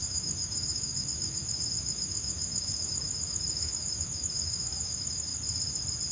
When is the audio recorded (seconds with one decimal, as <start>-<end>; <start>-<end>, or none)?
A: 5.3-6.1